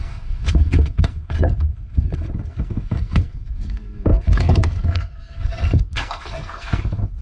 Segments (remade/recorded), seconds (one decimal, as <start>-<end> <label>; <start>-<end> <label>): 0.0-7.2 remade